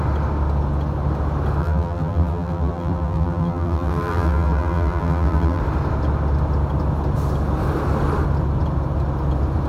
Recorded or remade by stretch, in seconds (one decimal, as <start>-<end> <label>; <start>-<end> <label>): 0.0-1.6 recorded; 1.6-5.6 remade; 5.6-9.7 recorded